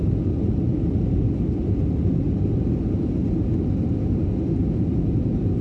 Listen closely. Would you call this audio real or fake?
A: real